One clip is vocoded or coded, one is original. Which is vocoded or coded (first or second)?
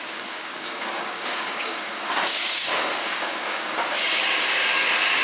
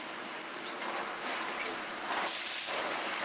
first